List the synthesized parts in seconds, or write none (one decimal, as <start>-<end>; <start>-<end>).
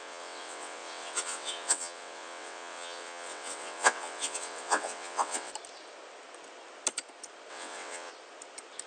0.0-5.5; 7.5-8.1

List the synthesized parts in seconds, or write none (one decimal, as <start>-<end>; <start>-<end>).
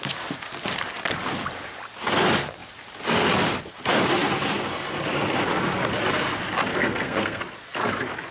6.7-7.4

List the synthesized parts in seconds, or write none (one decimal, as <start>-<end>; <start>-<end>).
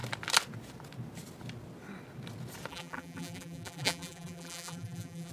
2.7-5.3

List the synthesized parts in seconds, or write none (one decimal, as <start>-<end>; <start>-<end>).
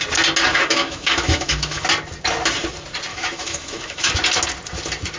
0.5-1.8; 3.1-4.1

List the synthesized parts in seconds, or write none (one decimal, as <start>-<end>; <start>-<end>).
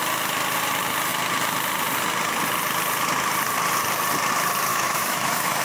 4.7-5.6